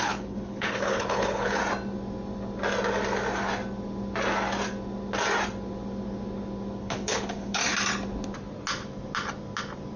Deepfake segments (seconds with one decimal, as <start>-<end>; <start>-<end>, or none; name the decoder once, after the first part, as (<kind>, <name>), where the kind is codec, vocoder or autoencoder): 0.0-1.6 (codec, HILCodec); 6.8-7.6

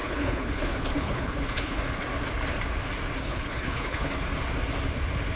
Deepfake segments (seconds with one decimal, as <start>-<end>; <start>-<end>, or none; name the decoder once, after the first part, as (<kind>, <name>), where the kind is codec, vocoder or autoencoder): 0.0-1.8 (codec, HILCodec); 3.2-4.1

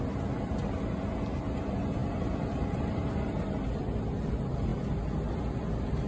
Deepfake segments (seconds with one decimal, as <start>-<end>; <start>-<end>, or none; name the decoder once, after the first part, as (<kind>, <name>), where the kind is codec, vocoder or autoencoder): none

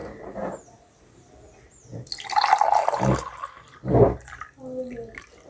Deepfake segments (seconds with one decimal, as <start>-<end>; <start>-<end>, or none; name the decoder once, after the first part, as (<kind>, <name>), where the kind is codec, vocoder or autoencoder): none

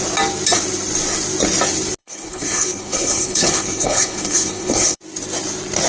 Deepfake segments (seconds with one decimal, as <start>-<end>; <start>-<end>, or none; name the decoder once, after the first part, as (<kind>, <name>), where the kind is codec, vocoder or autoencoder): 2.0-5.0 (codec, HILCodec)